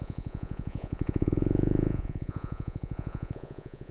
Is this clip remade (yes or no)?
yes